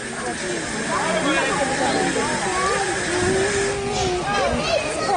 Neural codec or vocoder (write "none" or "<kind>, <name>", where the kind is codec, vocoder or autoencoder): none